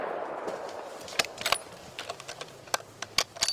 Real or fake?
real